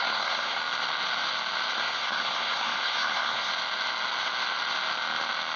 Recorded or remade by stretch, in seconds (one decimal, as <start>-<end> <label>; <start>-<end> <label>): 0.0-0.6 remade; 0.6-1.7 recorded; 1.7-3.5 remade; 3.5-5.6 recorded